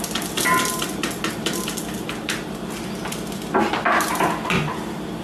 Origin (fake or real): real